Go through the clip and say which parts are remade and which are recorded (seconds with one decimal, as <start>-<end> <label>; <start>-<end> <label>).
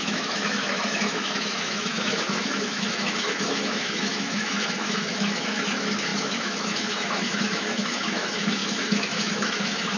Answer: 0.0-10.0 remade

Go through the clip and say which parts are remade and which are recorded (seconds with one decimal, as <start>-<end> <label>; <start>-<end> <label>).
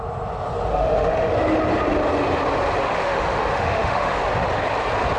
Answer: 0.0-0.7 recorded; 0.7-1.3 remade; 1.3-2.8 recorded; 2.8-4.2 remade; 4.2-5.2 recorded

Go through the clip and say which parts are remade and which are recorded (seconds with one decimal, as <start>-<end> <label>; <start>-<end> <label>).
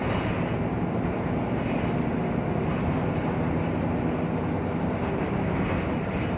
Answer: 0.0-6.4 recorded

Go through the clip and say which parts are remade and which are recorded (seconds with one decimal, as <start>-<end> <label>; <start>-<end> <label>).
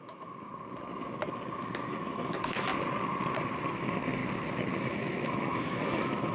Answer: 0.0-0.5 remade; 0.5-1.9 recorded; 1.9-2.7 remade; 2.7-3.8 recorded; 3.8-4.2 remade; 4.2-4.7 recorded; 4.7-6.3 remade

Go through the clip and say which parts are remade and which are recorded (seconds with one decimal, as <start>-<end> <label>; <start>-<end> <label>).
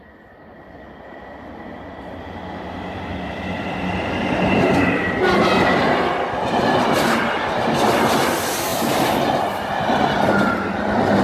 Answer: 0.0-11.2 recorded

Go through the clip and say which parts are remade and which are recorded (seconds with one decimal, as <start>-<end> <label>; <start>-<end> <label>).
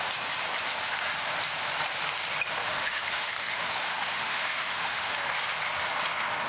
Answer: 0.0-2.6 recorded; 2.6-5.1 remade; 5.1-6.5 recorded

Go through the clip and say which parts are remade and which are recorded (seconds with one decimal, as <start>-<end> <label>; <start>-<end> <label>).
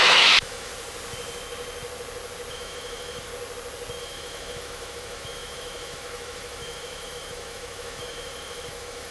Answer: 0.0-0.7 remade; 0.7-2.5 recorded; 2.5-3.3 remade; 3.3-4.0 recorded; 4.0-9.1 remade